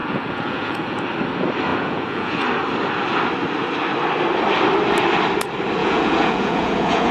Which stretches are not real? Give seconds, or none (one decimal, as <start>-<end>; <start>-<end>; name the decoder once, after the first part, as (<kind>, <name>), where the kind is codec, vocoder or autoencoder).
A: 0.0-1.0 (vocoder, Vocos); 1.7-2.4; 5.8-7.1